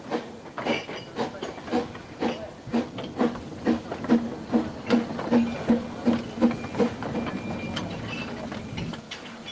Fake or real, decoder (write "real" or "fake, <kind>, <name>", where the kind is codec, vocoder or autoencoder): real